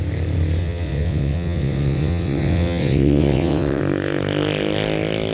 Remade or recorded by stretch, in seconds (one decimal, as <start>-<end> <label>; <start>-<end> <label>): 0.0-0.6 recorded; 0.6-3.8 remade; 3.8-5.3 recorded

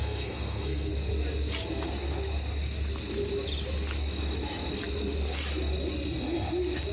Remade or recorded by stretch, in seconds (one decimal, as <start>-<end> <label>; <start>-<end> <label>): 0.0-0.9 remade; 0.9-6.9 recorded

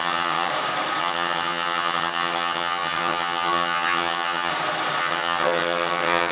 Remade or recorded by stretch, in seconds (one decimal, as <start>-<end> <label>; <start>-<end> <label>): 0.0-0.5 remade; 0.5-1.0 recorded; 1.0-4.5 remade; 4.5-5.0 recorded; 5.0-6.3 remade